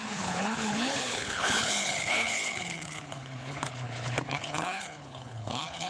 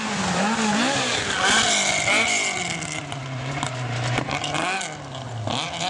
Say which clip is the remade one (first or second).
first